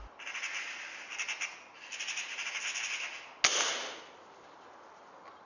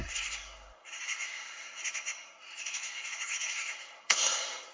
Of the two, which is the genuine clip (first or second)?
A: first